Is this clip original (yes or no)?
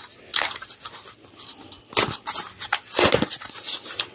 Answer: yes